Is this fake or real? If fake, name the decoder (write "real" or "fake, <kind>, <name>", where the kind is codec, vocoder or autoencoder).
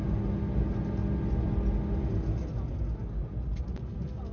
real